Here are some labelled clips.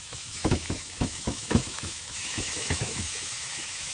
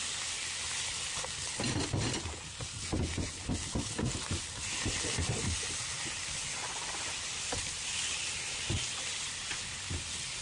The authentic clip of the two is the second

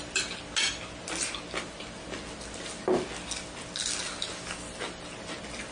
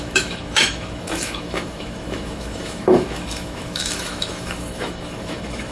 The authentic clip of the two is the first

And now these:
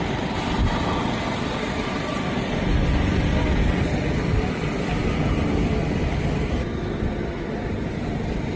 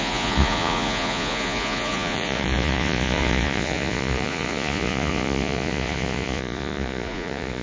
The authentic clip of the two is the first